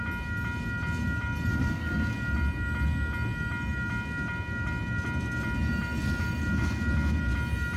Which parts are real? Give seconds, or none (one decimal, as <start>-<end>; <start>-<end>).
0.0-1.5; 2.1-7.8